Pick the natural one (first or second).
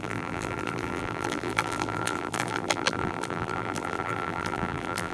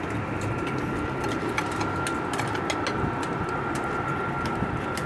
second